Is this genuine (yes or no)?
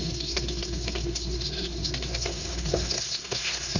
no